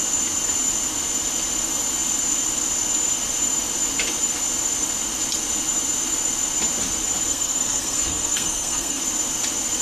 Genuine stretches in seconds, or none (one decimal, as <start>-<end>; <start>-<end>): 0.0-7.3; 9.0-9.8

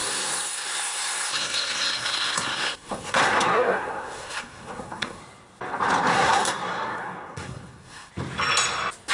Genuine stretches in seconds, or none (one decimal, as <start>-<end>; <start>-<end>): 5.2-6.1; 8.1-9.1

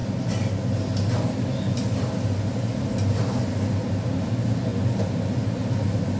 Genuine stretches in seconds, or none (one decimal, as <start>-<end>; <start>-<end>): 0.0-6.2